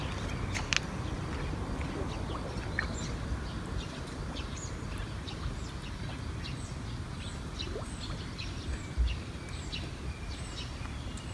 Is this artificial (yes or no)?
no